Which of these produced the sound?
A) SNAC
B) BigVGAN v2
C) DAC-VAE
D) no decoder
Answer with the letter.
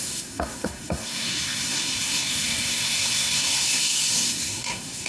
A